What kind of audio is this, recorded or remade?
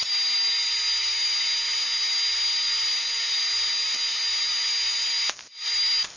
recorded